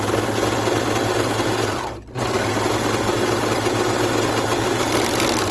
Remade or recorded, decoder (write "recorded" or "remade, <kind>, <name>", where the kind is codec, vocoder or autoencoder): recorded